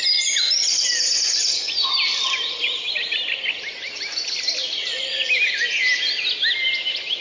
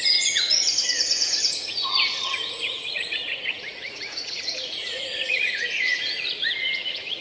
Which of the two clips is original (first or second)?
first